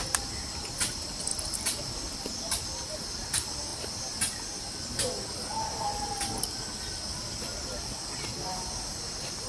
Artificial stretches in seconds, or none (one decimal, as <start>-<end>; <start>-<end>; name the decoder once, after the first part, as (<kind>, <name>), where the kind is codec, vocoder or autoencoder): 1.3-2.3 (vocoder, BigVGAN v2); 3.7-4.7